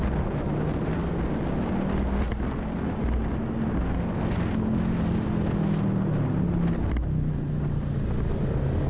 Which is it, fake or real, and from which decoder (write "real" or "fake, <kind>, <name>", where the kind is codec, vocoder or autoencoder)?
real